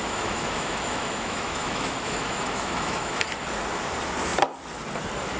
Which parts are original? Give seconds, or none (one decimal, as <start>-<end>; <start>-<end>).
3.2-5.4